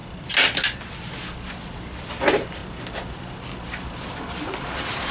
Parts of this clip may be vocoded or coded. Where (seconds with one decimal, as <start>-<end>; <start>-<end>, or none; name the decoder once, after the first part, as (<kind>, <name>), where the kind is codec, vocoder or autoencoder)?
2.0-2.6 (vocoder, BigVGAN v2); 4.3-5.1

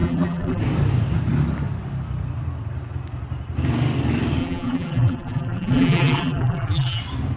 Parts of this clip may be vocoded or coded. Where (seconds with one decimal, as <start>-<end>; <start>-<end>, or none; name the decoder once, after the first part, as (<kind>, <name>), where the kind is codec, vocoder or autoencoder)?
0.0-0.6 (vocoder, BigVGAN v2); 4.4-7.0

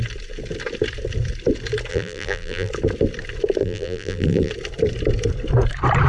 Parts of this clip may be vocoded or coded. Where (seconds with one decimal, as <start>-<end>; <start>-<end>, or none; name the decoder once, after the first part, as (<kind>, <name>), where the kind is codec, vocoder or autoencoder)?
1.9-2.7 (vocoder, BigVGAN v2); 3.6-4.5

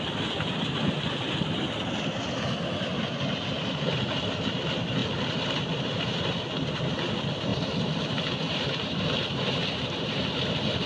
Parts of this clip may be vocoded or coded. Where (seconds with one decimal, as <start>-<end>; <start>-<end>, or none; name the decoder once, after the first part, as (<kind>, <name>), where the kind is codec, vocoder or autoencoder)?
5.0-6.7 (vocoder, BigVGAN v2); 7.5-10.1

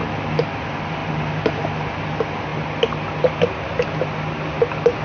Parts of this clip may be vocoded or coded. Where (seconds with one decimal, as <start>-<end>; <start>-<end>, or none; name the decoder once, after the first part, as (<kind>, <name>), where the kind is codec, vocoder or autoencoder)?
2.5-3.2 (vocoder, BigVGAN v2)